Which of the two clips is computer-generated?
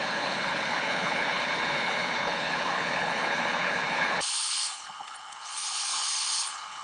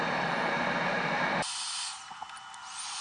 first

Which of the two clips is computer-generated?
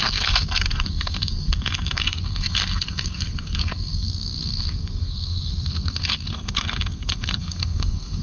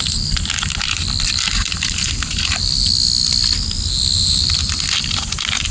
first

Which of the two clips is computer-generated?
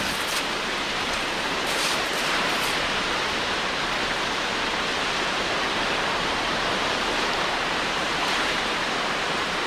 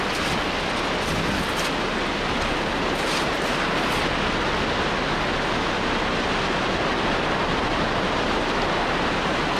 first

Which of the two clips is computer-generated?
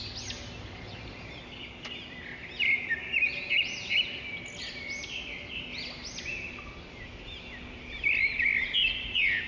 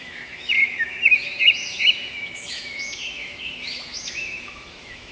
second